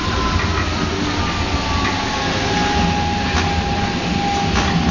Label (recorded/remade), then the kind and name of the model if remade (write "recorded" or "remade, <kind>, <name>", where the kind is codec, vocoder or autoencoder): recorded